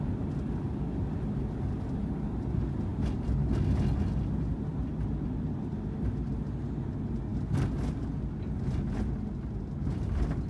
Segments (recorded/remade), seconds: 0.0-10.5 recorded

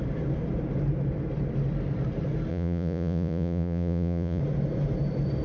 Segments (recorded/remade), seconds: 0.0-2.5 recorded; 2.5-4.4 remade; 4.4-5.4 recorded